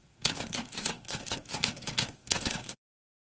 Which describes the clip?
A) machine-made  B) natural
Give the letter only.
A